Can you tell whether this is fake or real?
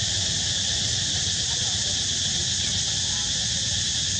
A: real